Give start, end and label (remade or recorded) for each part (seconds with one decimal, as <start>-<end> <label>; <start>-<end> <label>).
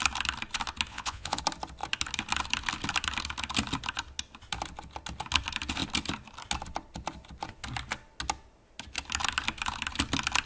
0.0-0.9 recorded; 0.9-1.4 remade; 1.4-10.5 recorded